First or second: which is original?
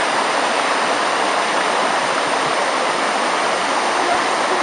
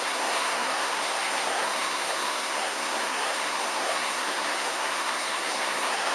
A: first